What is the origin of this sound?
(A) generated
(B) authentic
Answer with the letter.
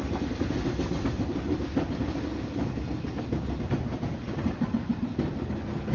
B